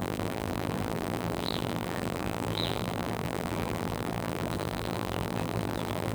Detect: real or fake fake